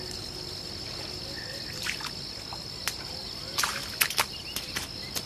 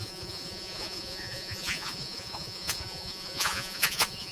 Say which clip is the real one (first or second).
first